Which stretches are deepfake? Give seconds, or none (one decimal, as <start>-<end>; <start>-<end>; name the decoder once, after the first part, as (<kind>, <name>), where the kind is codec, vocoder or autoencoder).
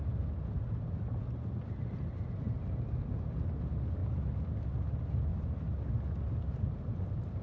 none